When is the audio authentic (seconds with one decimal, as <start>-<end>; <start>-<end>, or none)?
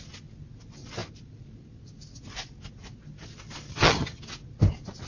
0.0-3.7; 4.2-5.1